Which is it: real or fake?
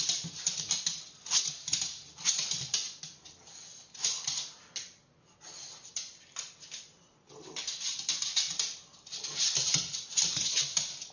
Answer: real